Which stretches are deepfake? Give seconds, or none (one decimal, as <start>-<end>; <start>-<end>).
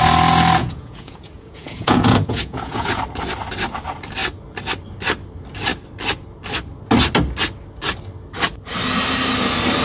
0.6-3.0